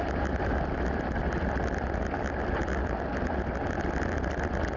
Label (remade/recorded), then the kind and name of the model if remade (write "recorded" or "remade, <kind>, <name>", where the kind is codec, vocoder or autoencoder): recorded